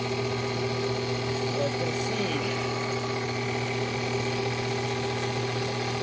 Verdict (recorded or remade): recorded